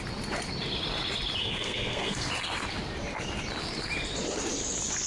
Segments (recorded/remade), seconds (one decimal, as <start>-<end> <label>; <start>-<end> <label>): 0.0-1.4 recorded; 1.4-2.3 remade; 2.3-5.1 recorded